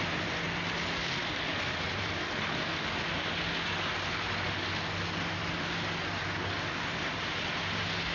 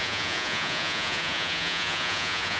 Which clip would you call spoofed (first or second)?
second